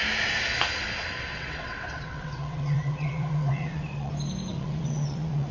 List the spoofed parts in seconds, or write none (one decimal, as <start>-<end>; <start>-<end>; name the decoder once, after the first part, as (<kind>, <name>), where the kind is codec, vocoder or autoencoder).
1.3-4.1 (vocoder, WaveNeXt); 4.5-5.5